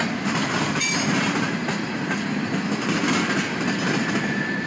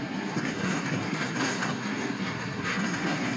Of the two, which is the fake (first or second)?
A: second